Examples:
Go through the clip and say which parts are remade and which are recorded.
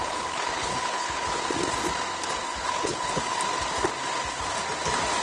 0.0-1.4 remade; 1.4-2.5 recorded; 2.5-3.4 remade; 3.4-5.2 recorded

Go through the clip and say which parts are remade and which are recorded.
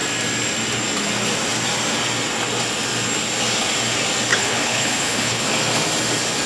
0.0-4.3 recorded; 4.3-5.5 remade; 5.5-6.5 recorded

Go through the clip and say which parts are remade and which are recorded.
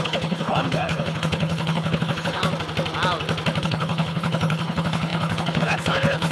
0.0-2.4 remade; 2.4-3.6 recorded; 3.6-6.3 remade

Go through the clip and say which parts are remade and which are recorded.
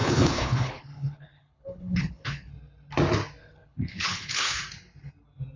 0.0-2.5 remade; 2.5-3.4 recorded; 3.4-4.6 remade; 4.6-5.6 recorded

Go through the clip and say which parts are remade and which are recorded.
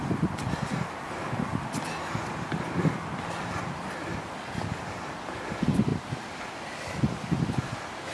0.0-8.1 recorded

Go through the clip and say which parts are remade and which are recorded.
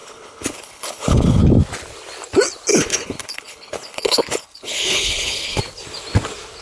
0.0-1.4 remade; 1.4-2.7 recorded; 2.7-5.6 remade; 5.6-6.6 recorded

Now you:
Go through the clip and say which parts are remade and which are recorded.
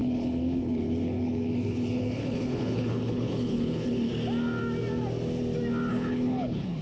0.0-4.1 remade; 4.1-5.9 recorded; 5.9-6.8 remade